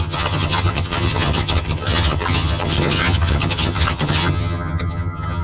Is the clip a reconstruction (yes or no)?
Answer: yes